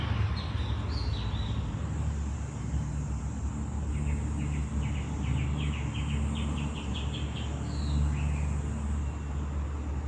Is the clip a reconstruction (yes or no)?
no